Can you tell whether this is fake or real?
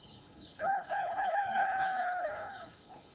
fake